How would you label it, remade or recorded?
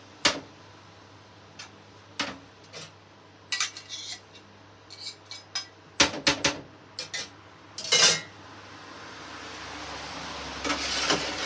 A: recorded